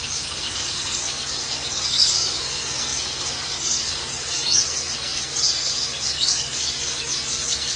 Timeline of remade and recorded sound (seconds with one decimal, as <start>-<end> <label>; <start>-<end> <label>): 0.0-7.8 remade